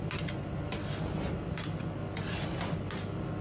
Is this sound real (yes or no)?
yes